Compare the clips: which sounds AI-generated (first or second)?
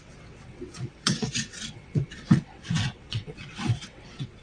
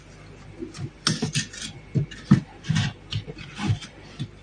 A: first